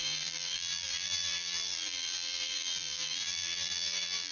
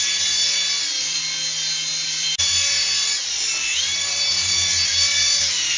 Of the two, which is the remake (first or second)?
first